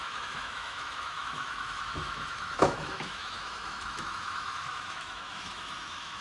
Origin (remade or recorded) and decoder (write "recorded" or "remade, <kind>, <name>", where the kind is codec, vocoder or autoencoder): remade, autoencoder, DAC-VAE